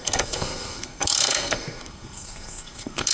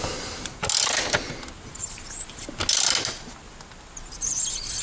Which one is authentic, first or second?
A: second